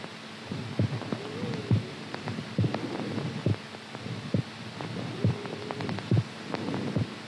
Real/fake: real